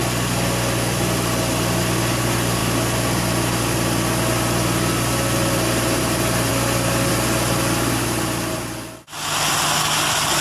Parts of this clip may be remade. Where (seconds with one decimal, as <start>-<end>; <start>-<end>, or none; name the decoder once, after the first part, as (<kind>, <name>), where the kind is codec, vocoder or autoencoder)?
none